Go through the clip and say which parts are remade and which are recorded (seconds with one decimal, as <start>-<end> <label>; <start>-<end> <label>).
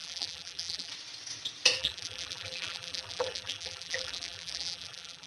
0.0-0.9 remade; 0.9-1.8 recorded; 1.8-5.3 remade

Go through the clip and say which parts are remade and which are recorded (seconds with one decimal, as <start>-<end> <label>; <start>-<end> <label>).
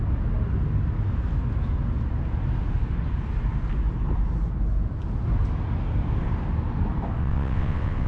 0.0-7.2 recorded; 7.2-8.1 remade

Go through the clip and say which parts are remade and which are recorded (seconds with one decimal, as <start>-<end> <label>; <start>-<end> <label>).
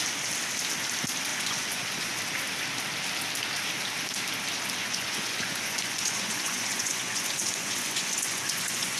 0.0-1.3 recorded; 1.3-2.2 remade; 2.2-4.8 recorded; 4.8-9.0 remade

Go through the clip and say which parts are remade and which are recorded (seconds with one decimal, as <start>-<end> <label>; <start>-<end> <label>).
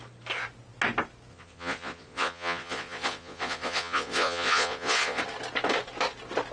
0.0-1.3 recorded; 1.3-5.2 remade; 5.2-6.5 recorded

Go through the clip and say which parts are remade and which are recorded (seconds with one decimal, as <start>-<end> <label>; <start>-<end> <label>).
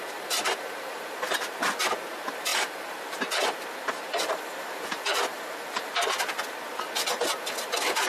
0.0-8.1 remade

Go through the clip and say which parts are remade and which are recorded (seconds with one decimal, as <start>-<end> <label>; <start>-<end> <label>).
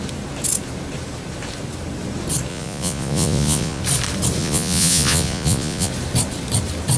0.0-2.5 recorded; 2.5-3.8 remade; 3.8-4.4 recorded; 4.4-5.9 remade; 5.9-7.0 recorded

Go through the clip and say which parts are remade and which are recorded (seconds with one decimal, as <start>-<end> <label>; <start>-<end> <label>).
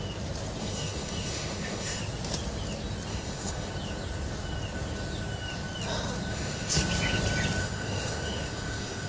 0.0-0.6 recorded; 0.6-2.0 remade; 2.0-3.1 recorded; 3.1-3.7 remade; 3.7-6.3 recorded; 6.3-6.8 remade; 6.8-7.6 recorded; 7.6-9.1 remade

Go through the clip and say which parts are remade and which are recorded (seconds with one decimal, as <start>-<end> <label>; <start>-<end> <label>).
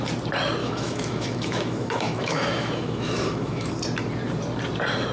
0.0-0.6 recorded; 0.6-3.7 remade; 3.7-5.1 recorded